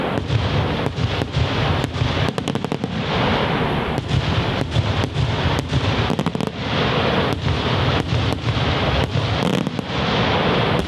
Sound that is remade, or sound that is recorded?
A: recorded